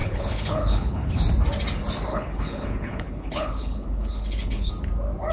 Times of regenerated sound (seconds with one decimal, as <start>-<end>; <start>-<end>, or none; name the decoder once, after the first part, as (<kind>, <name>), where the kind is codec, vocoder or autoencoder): 0.0-1.1 (codec, HILCodec); 2.1-4.7